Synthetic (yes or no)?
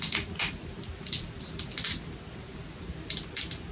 no